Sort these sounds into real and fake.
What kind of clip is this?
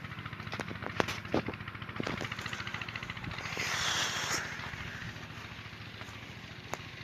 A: real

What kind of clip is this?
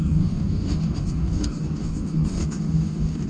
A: fake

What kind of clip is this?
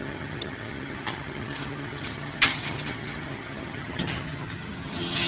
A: fake